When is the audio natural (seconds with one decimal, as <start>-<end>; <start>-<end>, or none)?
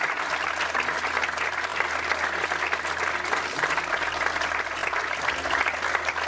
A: 0.0-6.3